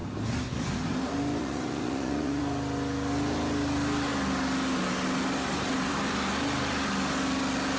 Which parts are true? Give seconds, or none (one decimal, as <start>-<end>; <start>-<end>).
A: 0.0-1.4; 2.4-7.8